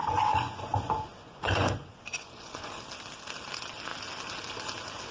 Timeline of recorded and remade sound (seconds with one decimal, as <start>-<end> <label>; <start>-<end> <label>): 0.0-2.8 remade; 2.8-5.1 recorded